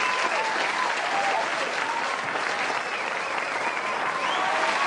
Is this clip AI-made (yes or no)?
no